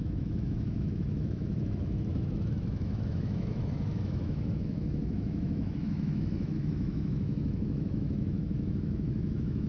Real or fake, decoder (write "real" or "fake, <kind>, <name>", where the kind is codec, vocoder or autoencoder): fake, autoencoder, DAC-VAE